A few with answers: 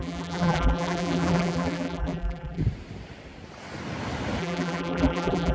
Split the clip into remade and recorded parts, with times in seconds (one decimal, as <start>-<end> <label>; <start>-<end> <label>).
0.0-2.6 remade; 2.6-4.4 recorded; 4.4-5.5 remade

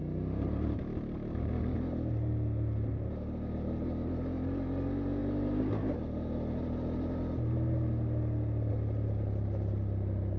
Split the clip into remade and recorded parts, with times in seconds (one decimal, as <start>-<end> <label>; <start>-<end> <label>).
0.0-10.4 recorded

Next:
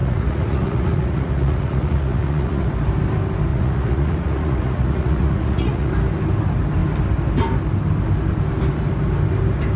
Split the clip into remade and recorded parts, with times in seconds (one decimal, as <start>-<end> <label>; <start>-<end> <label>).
0.0-2.7 remade; 2.7-3.5 recorded; 3.5-5.9 remade; 5.9-9.8 recorded